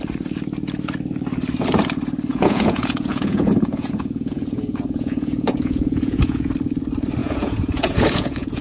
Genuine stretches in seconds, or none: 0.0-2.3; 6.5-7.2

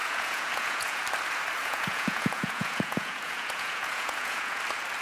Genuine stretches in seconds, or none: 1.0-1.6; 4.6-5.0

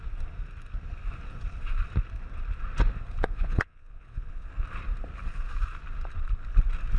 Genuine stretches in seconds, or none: 0.0-3.2; 4.5-7.0